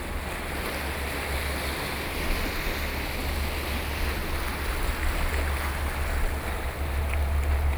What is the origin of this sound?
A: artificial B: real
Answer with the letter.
B